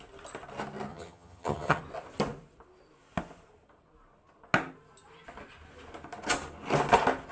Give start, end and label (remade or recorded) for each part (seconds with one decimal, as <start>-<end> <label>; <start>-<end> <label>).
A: 0.0-0.9 recorded; 0.9-1.8 remade; 1.8-7.3 recorded